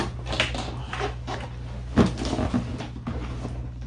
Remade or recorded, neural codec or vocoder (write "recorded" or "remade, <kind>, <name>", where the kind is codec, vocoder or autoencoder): recorded